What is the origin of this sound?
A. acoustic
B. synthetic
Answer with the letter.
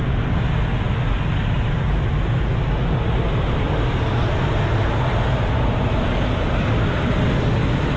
A